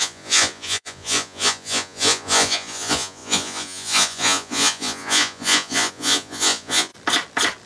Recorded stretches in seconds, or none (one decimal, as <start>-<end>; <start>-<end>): 6.9-7.7

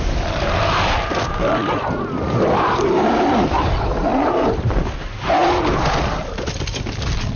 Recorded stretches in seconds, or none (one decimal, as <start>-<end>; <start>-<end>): 5.4-6.0

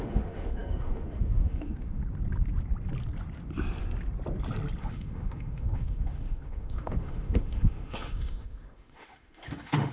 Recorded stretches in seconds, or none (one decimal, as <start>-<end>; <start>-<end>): 2.0-4.8

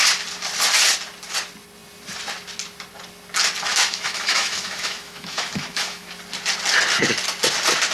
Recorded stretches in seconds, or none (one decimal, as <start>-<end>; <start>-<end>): 0.0-3.7; 6.1-7.9